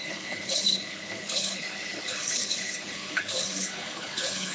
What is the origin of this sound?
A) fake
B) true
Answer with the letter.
A